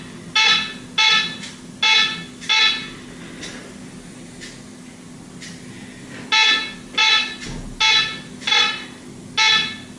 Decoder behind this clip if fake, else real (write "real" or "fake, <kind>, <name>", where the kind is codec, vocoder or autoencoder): real